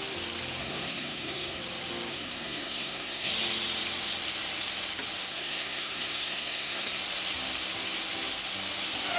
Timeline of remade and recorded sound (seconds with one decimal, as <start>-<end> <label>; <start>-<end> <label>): 0.0-0.6 recorded; 0.6-1.6 remade; 1.6-2.1 recorded; 2.1-3.3 remade; 3.3-5.3 recorded; 5.3-7.0 remade; 7.0-9.2 recorded